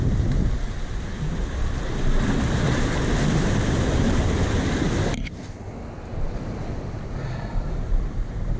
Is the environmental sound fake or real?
real